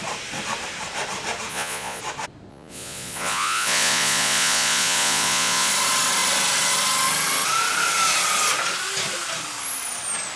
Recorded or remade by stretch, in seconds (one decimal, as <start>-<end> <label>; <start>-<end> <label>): 0.0-1.5 recorded; 1.5-2.0 remade; 2.0-2.5 recorded; 2.5-5.7 remade; 5.7-10.4 recorded